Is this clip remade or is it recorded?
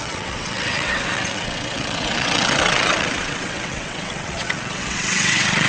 remade